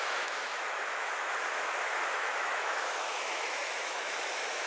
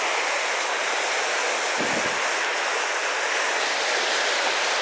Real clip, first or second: second